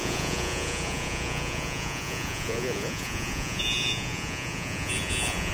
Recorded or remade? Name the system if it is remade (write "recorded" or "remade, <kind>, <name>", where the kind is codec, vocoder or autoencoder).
remade, vocoder, Vocos